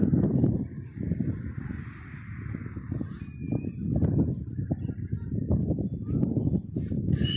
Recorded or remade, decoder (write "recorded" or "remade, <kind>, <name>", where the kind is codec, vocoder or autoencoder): recorded